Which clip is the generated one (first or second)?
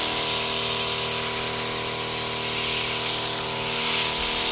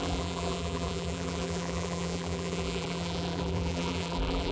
second